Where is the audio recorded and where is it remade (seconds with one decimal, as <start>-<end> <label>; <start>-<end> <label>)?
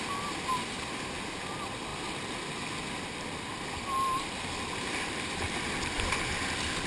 0.0-6.9 recorded